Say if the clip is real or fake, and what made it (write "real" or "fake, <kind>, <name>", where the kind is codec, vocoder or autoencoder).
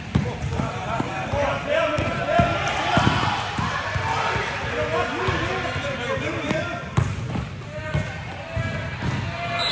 real